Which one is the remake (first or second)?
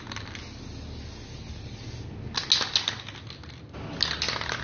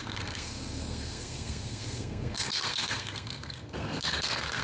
second